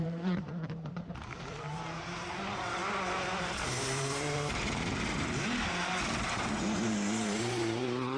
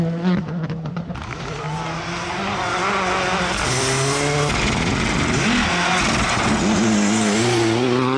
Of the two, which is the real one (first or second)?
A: second